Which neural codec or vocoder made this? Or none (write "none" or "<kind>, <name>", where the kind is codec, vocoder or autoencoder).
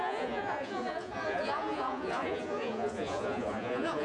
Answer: vocoder, Vocos